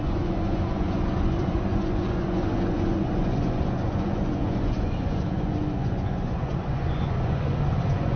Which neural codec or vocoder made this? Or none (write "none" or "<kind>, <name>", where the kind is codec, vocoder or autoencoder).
vocoder, Vocos